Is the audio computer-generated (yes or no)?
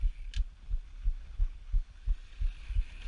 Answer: no